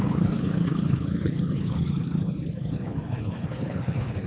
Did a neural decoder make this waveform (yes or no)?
yes